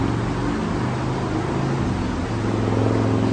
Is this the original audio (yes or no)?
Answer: yes